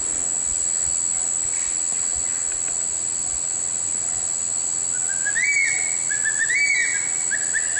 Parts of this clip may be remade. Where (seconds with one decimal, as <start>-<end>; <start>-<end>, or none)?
none

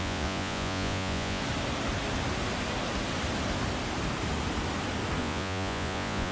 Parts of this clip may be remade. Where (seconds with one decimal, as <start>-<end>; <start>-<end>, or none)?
0.0-1.4; 5.2-6.3

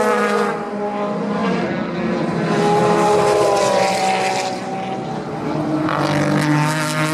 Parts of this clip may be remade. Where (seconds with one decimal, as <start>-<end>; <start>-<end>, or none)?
none

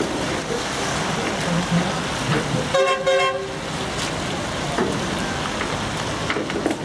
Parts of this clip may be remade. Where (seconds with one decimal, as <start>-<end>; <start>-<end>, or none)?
none

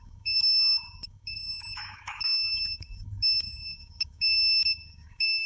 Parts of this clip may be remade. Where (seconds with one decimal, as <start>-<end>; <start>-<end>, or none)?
0.0-5.5

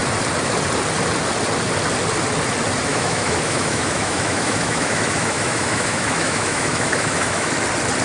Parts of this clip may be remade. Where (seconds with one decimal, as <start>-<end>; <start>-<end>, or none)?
2.9-7.5